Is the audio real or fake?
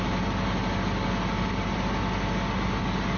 real